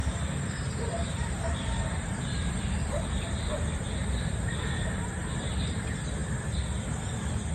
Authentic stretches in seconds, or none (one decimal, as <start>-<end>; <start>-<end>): 4.5-7.5